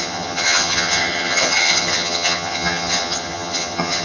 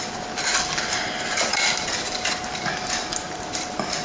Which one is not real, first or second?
first